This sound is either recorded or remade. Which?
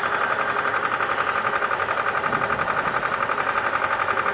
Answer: recorded